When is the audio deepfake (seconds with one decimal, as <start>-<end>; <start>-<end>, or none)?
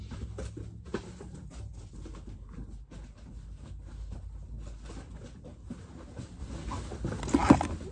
none